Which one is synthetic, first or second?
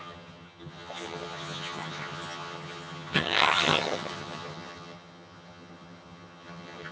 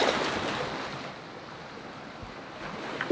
first